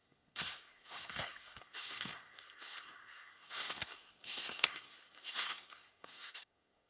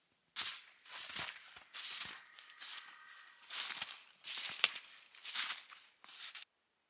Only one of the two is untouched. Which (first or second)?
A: second